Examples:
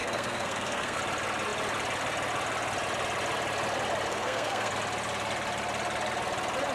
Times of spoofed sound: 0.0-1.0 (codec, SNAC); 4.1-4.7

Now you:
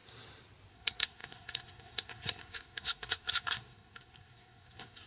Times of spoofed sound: 0.7-5.1 (codec, SNAC)

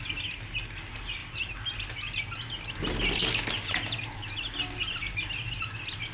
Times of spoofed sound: none

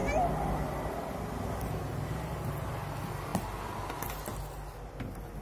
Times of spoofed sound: none

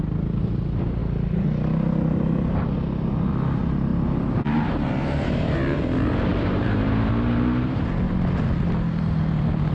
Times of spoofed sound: 3.9-5.8 (vocoder, BigVGAN v2); 6.3-8.1

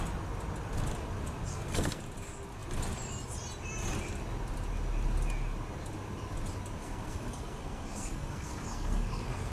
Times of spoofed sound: 1.5-2.0 (codec, SNAC); 6.8-9.5

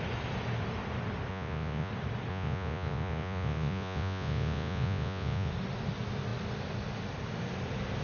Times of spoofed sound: 1.3-1.9 (vocoder, Vocos); 2.3-5.5